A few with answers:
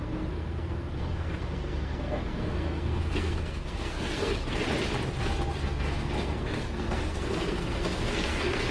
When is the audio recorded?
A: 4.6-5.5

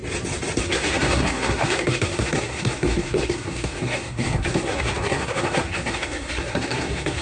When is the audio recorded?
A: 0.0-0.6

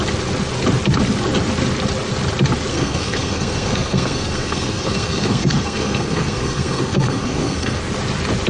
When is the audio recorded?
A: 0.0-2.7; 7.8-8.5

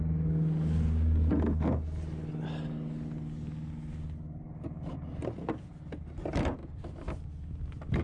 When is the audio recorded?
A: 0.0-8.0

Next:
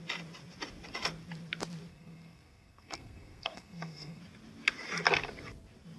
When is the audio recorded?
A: 0.0-1.9; 4.2-6.0

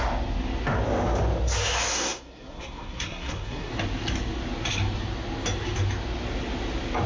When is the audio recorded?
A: 0.0-1.9; 3.7-7.1

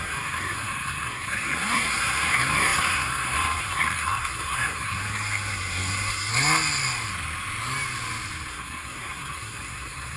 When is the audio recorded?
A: 6.3-8.5